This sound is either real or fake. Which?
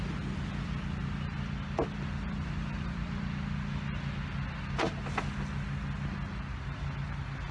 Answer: real